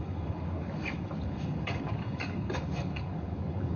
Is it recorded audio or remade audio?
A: remade